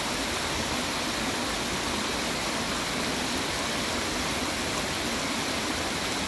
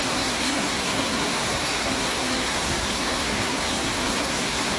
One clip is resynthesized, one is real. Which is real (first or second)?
first